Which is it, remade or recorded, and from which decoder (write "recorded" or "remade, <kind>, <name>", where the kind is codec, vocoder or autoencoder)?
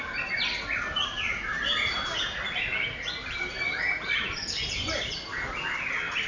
recorded